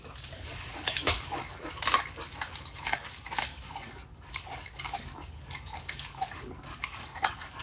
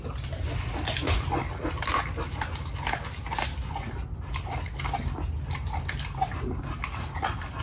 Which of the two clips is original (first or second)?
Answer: second